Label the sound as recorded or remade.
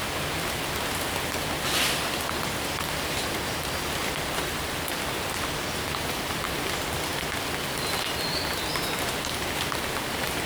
remade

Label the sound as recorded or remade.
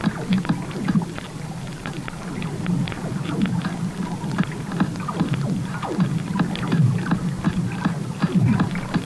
recorded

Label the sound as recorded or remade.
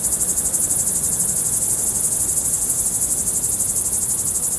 recorded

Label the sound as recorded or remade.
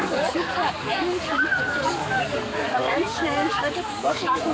remade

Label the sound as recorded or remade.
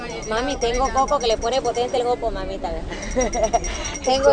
recorded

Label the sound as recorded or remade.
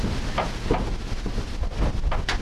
recorded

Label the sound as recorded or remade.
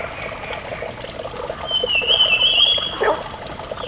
recorded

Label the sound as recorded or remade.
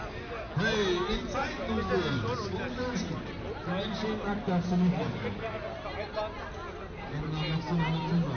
recorded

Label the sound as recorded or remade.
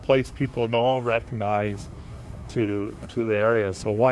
remade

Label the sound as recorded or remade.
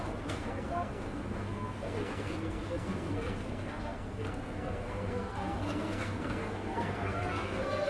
remade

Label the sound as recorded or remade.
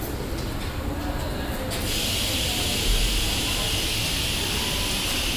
recorded